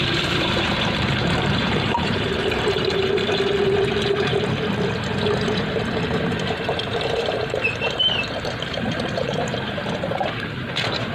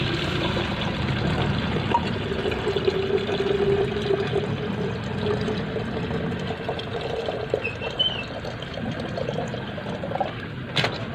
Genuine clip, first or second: second